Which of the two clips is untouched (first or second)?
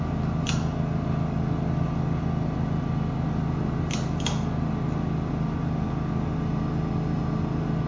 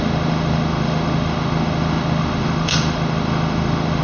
first